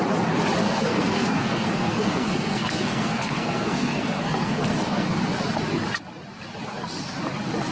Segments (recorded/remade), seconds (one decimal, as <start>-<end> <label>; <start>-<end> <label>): 0.0-0.6 recorded; 0.6-5.2 remade; 5.2-7.7 recorded